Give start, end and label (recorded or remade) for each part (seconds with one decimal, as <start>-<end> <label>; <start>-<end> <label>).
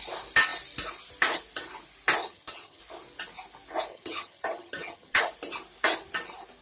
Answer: 0.0-2.2 recorded; 2.2-2.8 remade; 2.8-3.9 recorded; 3.9-5.3 remade; 5.3-6.6 recorded